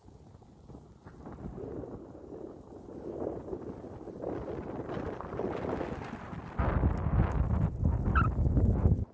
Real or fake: real